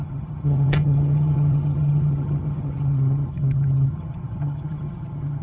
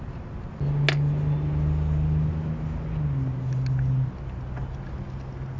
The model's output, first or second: first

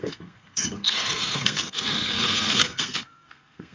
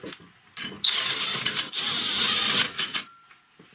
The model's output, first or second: first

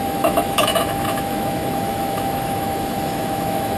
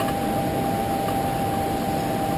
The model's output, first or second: first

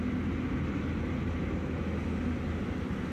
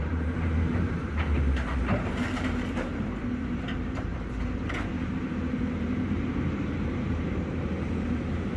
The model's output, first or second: second